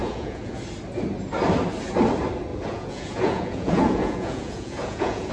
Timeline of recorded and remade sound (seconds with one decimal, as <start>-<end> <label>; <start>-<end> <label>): 0.0-0.6 remade; 0.6-2.5 recorded; 2.5-5.3 remade